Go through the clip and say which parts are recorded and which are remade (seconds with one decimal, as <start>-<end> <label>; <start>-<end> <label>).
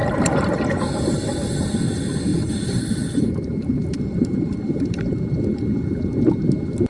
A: 0.0-2.3 recorded; 2.3-5.0 remade; 5.0-6.9 recorded